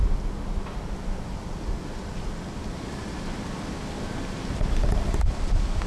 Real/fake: real